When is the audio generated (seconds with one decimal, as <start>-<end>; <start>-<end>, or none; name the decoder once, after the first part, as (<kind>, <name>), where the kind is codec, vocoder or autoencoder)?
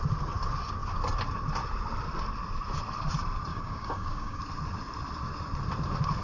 3.5-4.4 (codec, DAC)